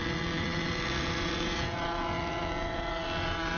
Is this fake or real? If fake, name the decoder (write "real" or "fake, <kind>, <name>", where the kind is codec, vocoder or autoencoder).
fake, vocoder, WaveNeXt